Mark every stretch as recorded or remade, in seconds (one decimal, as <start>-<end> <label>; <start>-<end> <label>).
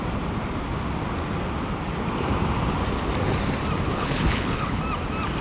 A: 0.0-3.9 recorded; 3.9-4.8 remade; 4.8-5.4 recorded